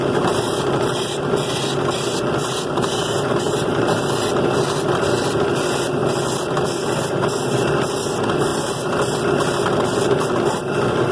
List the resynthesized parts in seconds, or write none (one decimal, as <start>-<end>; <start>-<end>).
2.4-4.0